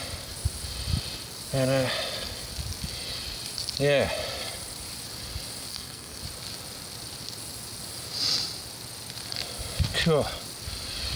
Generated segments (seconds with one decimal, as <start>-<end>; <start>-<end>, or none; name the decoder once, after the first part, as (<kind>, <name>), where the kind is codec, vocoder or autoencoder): 5.7-6.2 (codec, SNAC)